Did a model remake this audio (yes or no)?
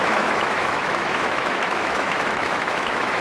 yes